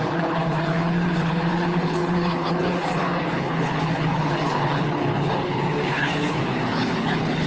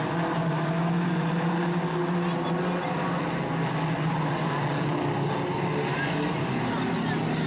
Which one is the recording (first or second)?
second